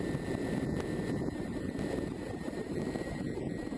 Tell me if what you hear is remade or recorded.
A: remade